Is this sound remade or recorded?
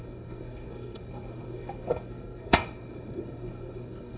remade